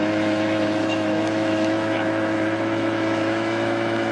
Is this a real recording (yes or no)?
no